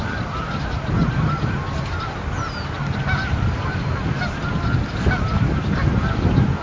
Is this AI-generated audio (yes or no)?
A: no